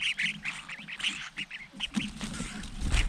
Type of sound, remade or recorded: remade